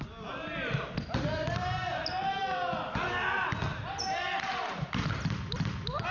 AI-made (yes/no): no